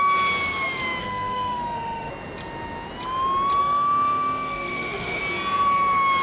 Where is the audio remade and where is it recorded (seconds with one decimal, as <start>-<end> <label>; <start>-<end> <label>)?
0.0-1.0 recorded; 1.0-2.1 remade; 2.1-3.6 recorded; 3.6-5.2 remade; 5.2-6.2 recorded